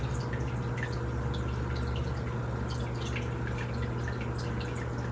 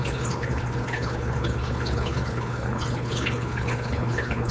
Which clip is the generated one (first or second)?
second